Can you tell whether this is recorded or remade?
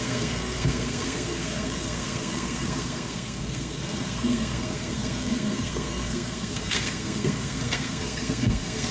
remade